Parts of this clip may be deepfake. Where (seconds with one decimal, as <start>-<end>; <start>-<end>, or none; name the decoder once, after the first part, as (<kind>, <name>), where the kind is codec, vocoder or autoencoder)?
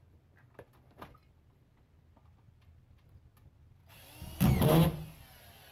none